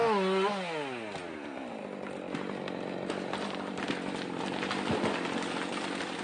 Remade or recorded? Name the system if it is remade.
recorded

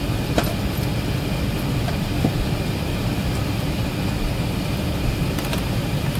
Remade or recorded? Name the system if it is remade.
recorded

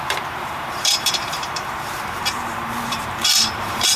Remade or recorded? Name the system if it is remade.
remade, vocoder, BigVGAN v2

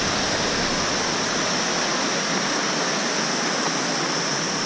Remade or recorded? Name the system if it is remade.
recorded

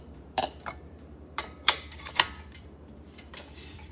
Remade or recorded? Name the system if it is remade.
remade, vocoder, BigVGAN v2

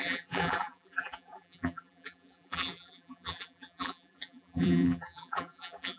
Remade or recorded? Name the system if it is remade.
remade, vocoder, BigVGAN v2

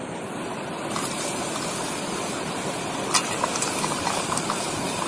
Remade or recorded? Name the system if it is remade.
remade, vocoder, BigVGAN v2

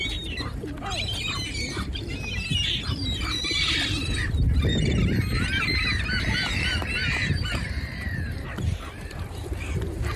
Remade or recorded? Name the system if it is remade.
remade, vocoder, BigVGAN v2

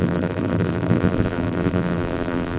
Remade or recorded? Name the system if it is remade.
remade, vocoder, BigVGAN v2